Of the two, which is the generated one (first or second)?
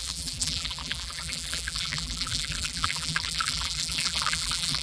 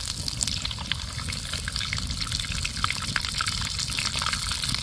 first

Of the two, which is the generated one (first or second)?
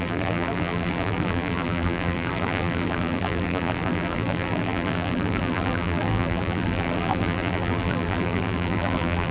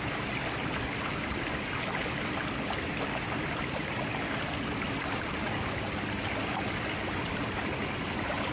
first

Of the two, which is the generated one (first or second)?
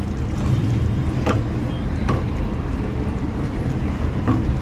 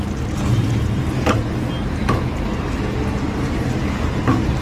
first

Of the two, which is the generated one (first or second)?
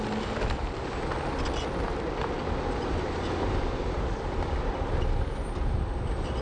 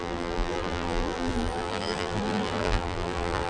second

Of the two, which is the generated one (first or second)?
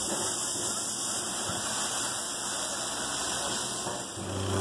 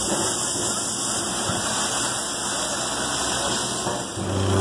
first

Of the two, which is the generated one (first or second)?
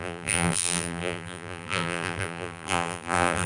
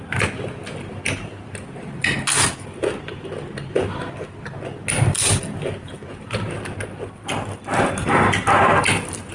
first